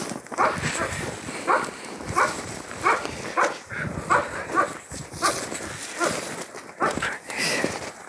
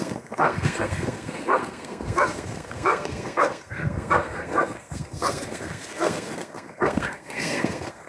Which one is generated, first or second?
second